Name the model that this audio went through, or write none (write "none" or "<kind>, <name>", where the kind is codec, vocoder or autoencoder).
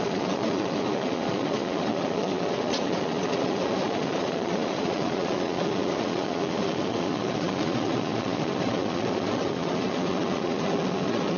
vocoder, Vocos